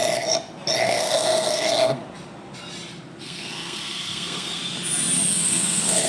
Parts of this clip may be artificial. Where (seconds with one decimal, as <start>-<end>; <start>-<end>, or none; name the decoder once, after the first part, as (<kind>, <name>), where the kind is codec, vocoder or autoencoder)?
0.8-2.0 (codec, SNAC); 3.2-4.6; 5.3-6.1